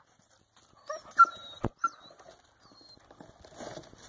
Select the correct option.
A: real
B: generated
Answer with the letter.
A